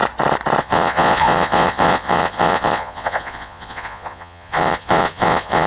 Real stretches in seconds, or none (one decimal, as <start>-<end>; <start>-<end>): 0.0-0.6